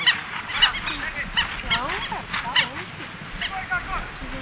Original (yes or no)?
yes